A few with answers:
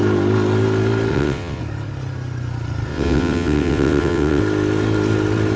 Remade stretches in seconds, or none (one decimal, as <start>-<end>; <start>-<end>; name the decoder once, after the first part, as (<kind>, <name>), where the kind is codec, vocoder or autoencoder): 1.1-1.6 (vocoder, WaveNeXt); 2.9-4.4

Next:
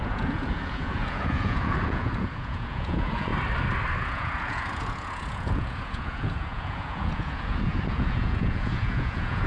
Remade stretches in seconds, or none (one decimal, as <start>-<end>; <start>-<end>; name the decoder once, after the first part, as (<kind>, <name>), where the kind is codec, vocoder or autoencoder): 0.0-3.3 (vocoder, Vocos); 4.0-9.5

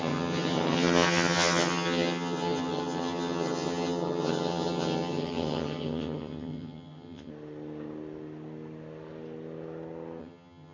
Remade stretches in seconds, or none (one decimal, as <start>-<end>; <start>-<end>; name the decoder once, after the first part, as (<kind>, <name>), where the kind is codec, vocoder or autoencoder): 0.0-7.3 (vocoder, HiFi-GAN); 10.2-10.7